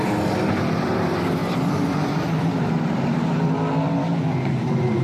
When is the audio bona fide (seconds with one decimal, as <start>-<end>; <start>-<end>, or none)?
0.0-1.4; 3.4-5.0